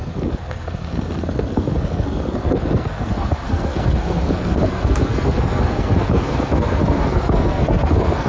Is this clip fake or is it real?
fake